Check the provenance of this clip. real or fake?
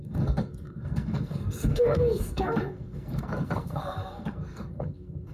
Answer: fake